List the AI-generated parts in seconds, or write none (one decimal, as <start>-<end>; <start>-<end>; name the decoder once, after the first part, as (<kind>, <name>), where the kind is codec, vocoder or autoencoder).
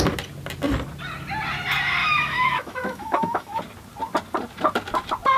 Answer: 2.0-3.6 (autoencoder, DAC-VAE)